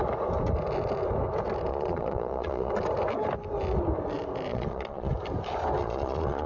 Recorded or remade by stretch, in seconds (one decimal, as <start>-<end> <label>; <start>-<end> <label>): 0.0-1.7 recorded; 1.7-2.7 remade; 2.7-4.5 recorded; 4.5-5.1 remade; 5.1-5.8 recorded; 5.8-6.5 remade